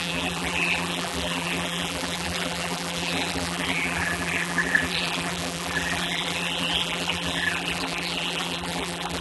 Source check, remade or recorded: remade